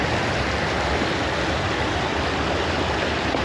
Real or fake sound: real